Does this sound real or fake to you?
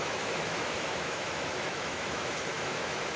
fake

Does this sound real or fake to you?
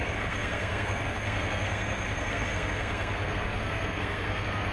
fake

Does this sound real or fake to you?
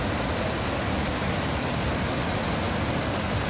real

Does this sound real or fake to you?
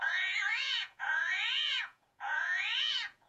fake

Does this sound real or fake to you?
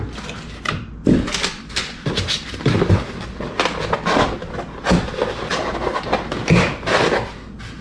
real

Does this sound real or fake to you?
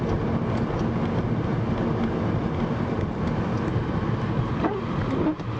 real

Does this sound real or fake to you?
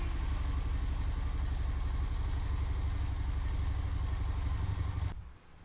real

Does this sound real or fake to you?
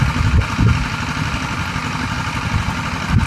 real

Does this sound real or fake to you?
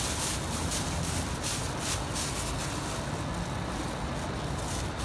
real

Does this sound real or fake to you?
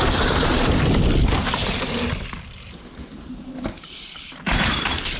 fake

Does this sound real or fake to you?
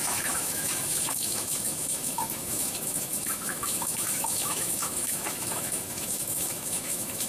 fake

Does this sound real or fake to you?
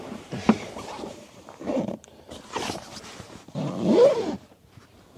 fake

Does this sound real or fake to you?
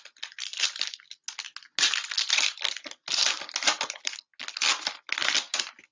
real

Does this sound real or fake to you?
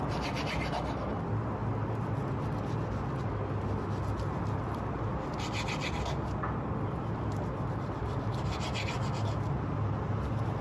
real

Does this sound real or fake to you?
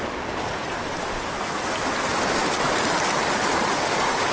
real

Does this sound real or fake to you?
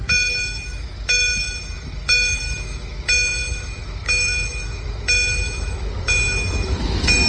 fake